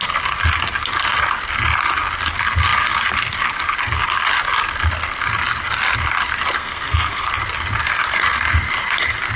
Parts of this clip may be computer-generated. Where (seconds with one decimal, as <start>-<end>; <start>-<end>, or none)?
6.6-7.3

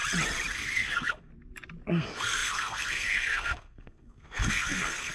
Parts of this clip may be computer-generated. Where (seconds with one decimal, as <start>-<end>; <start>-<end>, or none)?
0.5-1.3; 1.9-5.1

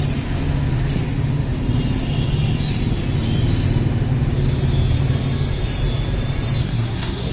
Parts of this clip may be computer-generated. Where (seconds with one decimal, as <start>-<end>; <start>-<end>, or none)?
6.6-7.3

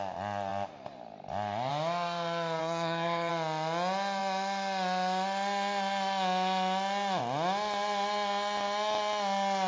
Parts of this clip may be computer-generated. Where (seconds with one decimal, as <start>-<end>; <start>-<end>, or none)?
2.6-3.3